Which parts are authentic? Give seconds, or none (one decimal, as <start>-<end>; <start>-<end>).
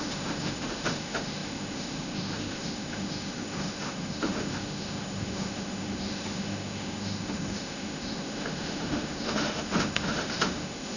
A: none